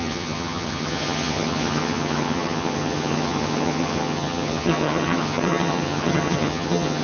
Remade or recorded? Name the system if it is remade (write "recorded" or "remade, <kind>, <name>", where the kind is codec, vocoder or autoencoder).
remade, vocoder, HiFi-GAN